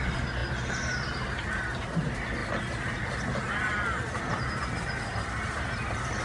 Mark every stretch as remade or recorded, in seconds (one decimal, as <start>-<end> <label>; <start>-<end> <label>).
0.0-2.4 recorded; 2.4-6.2 remade